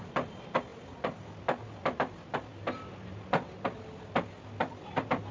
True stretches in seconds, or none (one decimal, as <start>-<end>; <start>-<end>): 0.0-5.3